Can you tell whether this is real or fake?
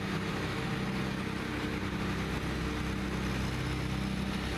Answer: real